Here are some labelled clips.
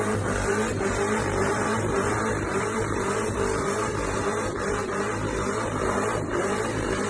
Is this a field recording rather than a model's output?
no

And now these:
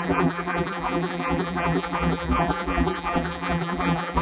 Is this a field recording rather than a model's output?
no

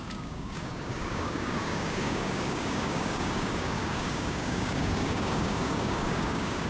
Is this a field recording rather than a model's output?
no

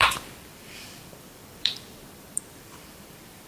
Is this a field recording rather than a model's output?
no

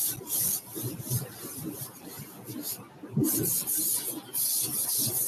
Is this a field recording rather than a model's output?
yes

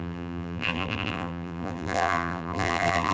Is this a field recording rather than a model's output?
no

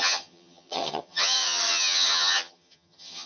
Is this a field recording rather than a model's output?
no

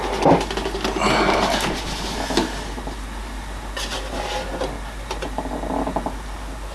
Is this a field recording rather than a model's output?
yes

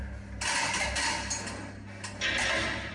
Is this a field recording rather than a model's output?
yes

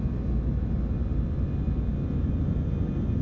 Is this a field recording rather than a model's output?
yes